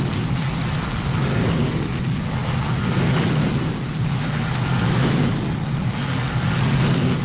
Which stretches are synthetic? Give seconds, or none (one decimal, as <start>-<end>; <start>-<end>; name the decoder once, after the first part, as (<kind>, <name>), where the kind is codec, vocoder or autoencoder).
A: none